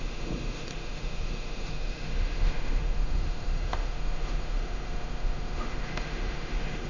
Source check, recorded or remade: remade